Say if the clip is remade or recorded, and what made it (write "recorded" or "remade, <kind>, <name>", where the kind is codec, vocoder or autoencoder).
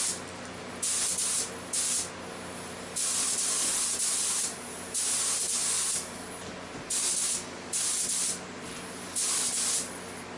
recorded